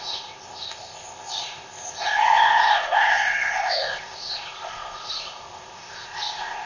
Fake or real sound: fake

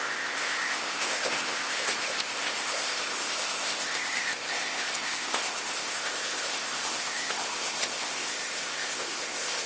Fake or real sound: fake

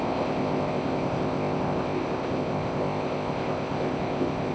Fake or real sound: fake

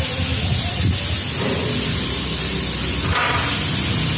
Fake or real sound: real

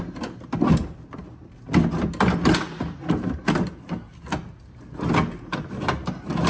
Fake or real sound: real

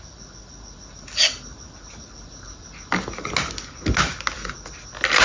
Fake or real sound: real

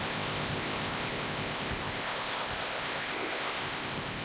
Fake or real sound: fake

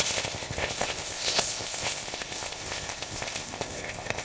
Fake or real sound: fake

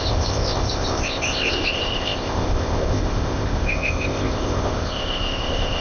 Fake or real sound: fake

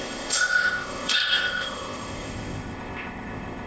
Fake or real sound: fake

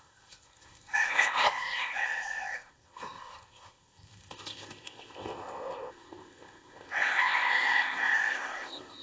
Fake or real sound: fake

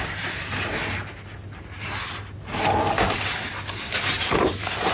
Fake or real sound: real